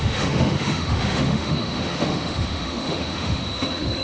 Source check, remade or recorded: remade